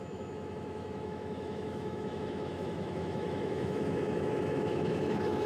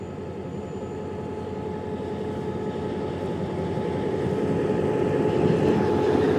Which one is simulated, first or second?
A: first